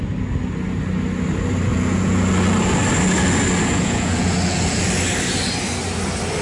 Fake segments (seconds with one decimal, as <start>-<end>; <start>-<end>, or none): 1.7-2.3; 3.6-4.8